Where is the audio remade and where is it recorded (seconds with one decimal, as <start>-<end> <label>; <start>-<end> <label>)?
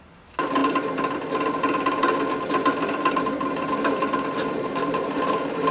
0.0-5.7 recorded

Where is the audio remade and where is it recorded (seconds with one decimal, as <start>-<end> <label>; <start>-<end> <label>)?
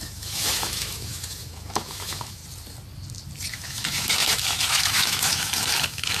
0.0-2.4 remade; 2.4-3.5 recorded; 3.5-6.2 remade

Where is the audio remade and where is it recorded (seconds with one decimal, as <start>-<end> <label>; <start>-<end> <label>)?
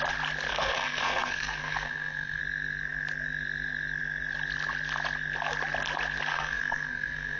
0.0-0.5 recorded; 0.5-2.4 remade; 2.4-6.3 recorded; 6.3-7.4 remade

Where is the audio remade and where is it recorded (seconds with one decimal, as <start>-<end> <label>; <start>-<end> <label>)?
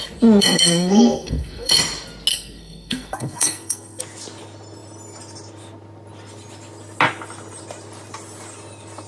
0.0-0.4 recorded; 0.4-1.7 remade; 1.7-2.3 recorded; 2.3-4.0 remade; 4.0-9.1 recorded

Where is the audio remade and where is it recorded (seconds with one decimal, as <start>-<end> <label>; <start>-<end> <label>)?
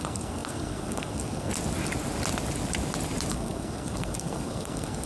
0.0-1.5 remade; 1.5-3.3 recorded; 3.3-5.1 remade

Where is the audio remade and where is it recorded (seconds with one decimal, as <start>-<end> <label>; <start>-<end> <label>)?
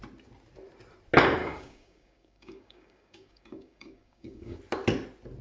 0.0-1.4 recorded; 1.4-4.6 remade; 4.6-5.4 recorded